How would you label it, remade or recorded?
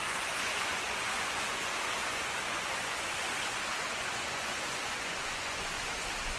remade